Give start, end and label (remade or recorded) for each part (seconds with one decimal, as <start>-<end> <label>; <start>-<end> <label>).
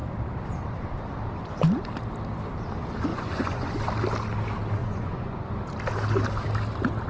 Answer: 0.0-3.1 recorded; 3.1-3.7 remade; 3.7-4.8 recorded; 4.8-5.5 remade; 5.5-7.1 recorded